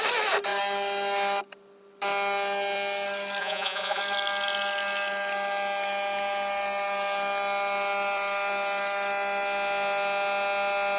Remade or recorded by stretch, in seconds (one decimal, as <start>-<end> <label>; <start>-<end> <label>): 0.0-3.4 recorded; 3.4-4.0 remade; 4.0-11.0 recorded